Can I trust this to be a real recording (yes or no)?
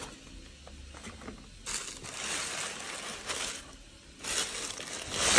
yes